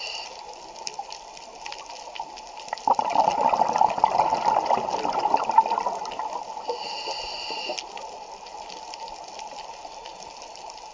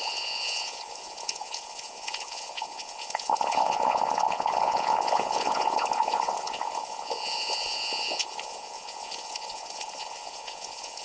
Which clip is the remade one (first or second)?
second